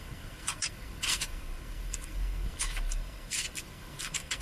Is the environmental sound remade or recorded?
remade